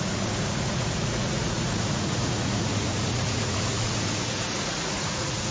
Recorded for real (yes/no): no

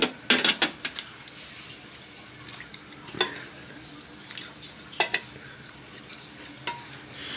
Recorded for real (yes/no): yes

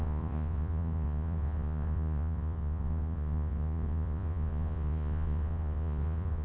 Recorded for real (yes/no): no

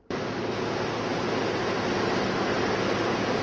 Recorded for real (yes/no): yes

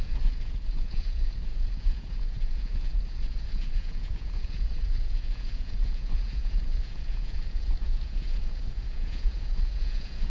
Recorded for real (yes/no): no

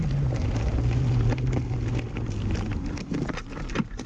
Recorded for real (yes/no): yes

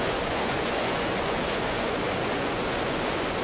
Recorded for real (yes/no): no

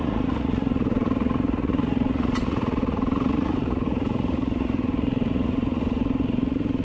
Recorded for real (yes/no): no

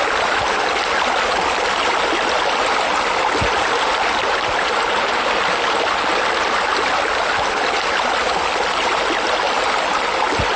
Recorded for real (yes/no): yes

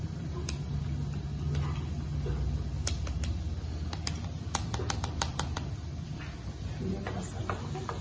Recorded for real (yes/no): yes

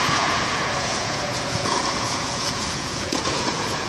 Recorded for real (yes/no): no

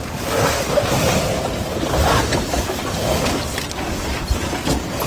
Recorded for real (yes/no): yes